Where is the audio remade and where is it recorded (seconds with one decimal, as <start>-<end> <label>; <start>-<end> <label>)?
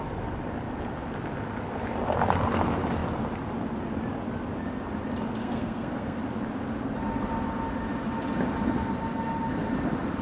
0.0-5.4 recorded; 5.4-6.2 remade; 6.2-10.2 recorded